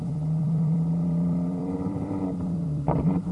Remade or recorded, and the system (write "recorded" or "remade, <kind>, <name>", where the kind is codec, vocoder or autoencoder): remade, vocoder, BigVGAN v2